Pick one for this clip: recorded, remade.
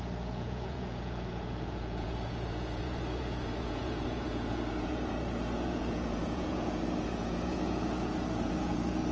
remade